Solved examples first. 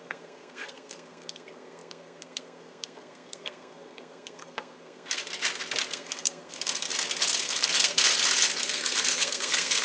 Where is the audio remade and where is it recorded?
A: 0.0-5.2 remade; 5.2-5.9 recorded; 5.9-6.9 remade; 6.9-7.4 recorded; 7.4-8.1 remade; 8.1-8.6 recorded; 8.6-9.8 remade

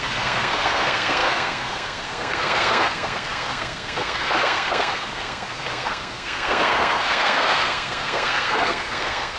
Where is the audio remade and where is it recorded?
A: 0.0-9.4 remade

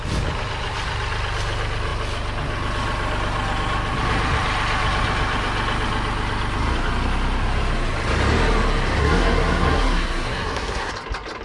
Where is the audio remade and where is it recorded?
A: 0.0-9.0 recorded; 9.0-10.9 remade; 10.9-11.4 recorded

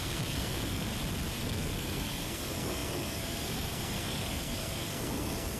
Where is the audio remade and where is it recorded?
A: 0.0-0.9 remade; 0.9-1.4 recorded; 1.4-5.6 remade

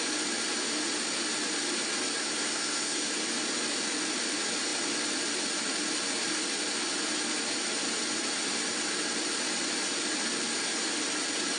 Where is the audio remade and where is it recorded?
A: 0.0-2.2 recorded; 2.2-3.1 remade; 3.1-11.6 recorded

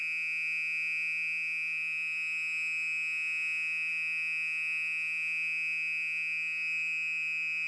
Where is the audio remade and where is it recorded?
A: 0.0-7.7 recorded

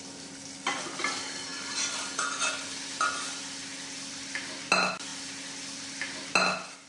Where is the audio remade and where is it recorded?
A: 0.0-6.9 recorded